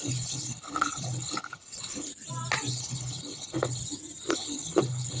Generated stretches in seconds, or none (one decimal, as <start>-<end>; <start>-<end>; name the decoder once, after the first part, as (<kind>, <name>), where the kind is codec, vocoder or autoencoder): 0.0-2.1 (codec, HILCodec); 2.7-3.8; 4.3-5.2